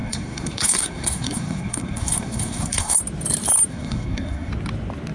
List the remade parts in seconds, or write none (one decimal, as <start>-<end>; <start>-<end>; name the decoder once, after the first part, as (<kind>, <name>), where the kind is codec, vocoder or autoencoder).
0.0-3.0 (codec, SNAC); 3.7-4.5